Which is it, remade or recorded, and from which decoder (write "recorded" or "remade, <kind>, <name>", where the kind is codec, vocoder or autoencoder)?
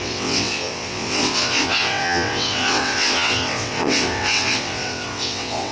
remade, vocoder, WaveNeXt